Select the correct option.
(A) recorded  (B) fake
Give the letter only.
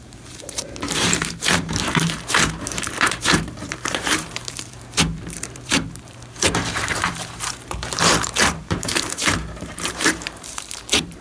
B